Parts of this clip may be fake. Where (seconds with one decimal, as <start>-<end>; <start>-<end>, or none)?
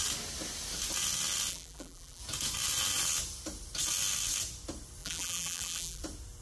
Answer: 1.5-2.2; 5.0-6.0